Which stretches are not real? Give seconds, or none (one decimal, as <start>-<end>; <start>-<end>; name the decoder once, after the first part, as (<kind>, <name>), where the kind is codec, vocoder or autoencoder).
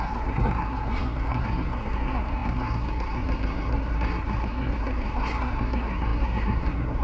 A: 0.0-7.0 (codec, SNAC)